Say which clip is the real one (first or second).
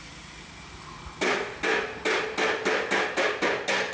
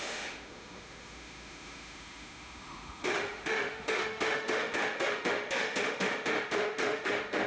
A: first